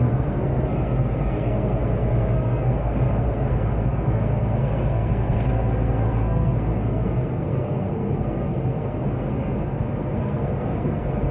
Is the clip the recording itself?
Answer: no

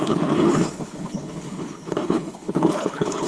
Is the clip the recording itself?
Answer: no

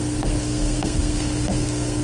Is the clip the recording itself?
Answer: no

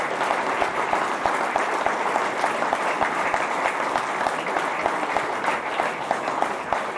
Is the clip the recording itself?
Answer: yes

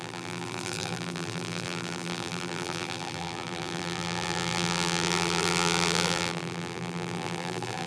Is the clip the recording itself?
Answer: no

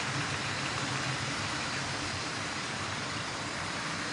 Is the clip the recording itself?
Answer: no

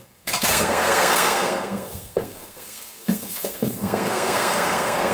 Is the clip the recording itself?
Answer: no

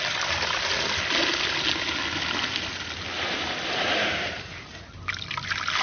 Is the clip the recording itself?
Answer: yes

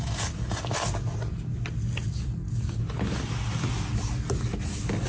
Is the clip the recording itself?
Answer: yes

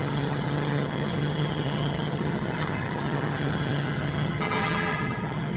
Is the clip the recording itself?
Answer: no